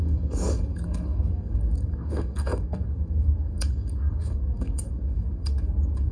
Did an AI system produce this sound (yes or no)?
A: yes